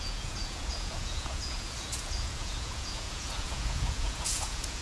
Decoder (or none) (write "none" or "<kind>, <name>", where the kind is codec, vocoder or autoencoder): vocoder, Vocos